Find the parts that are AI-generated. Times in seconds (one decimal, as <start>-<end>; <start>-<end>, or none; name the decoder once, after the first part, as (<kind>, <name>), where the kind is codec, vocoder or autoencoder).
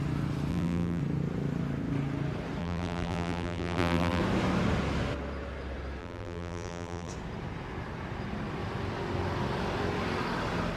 0.5-1.0 (vocoder, BigVGAN v2); 2.6-4.2; 6.0-7.1